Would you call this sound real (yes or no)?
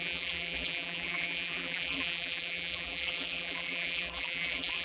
no